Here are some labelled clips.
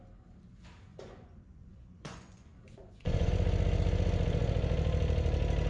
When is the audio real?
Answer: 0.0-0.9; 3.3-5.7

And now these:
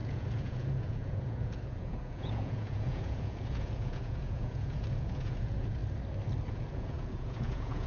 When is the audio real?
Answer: 5.8-6.5

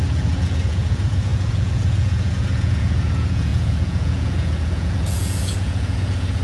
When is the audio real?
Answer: none